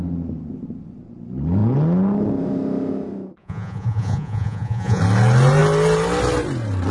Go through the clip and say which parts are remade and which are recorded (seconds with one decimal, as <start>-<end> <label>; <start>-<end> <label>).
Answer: 0.0-3.4 recorded; 3.4-5.0 remade; 5.0-6.9 recorded

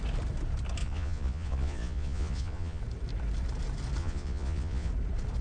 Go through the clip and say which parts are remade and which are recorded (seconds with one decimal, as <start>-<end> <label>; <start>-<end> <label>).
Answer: 0.0-0.8 recorded; 0.8-2.8 remade; 2.8-4.0 recorded; 4.0-4.9 remade; 4.9-5.4 recorded

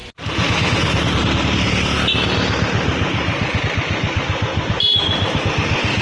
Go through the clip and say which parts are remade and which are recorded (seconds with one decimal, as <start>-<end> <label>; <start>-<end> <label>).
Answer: 0.0-6.0 recorded

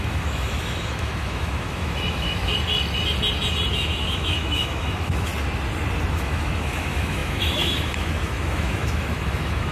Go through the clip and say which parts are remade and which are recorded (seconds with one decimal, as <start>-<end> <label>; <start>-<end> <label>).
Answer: 0.0-2.5 remade; 2.5-3.7 recorded; 3.7-5.3 remade; 5.3-6.1 recorded; 6.1-9.7 remade

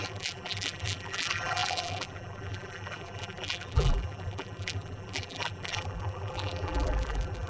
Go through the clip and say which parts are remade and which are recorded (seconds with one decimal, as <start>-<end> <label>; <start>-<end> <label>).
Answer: 0.0-7.5 remade